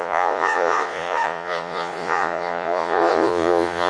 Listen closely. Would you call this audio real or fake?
fake